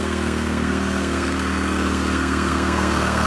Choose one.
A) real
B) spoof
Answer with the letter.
B